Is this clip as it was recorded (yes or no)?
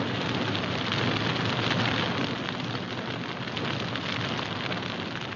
yes